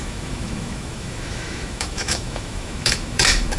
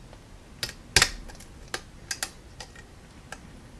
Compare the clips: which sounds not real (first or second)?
first